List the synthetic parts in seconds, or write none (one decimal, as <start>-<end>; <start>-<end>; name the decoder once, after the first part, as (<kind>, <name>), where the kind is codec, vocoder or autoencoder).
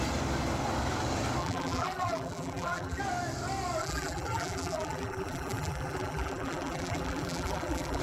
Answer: 1.4-3.0 (vocoder, BigVGAN v2); 3.8-8.0